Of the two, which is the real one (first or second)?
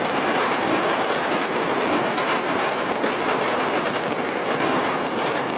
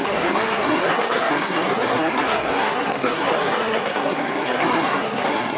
first